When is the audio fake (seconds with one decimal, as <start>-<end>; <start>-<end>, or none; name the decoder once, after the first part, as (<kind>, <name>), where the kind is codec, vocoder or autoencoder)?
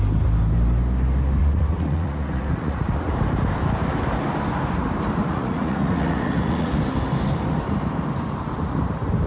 1.4-3.1 (vocoder, Vocos); 5.2-6.8